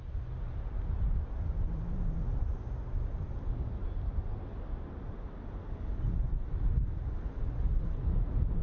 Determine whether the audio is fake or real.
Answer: real